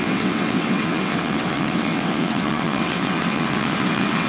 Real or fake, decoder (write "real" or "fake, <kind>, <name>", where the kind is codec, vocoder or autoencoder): fake, vocoder, WaveNeXt